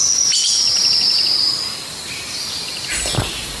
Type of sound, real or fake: real